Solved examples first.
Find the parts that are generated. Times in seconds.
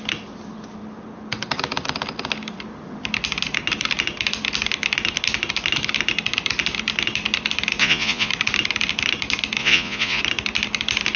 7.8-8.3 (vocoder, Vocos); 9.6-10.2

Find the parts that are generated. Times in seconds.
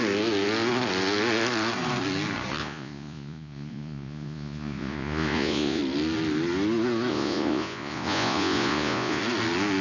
2.6-5.8 (vocoder, Vocos); 7.1-9.2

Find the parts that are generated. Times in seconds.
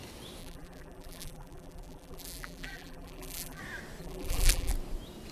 0.4-3.6 (vocoder, BigVGAN v2); 4.0-4.7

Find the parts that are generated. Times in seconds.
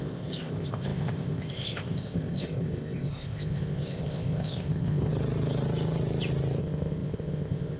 0.0-5.1 (codec, ZipCodec); 6.6-7.8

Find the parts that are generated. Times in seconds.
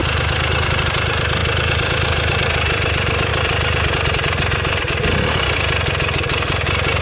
none